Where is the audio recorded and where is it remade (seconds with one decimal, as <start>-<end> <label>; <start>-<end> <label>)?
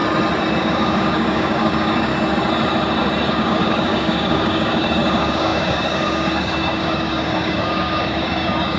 0.0-0.6 recorded; 0.6-2.1 remade; 2.1-3.3 recorded; 3.3-8.8 remade